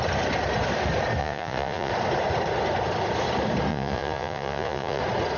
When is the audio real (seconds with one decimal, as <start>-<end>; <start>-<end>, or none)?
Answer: 0.0-1.2; 1.9-3.7; 5.0-5.4